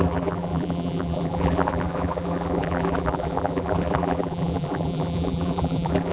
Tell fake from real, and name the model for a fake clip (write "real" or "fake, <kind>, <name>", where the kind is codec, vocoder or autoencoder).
fake, vocoder, BigVGAN v2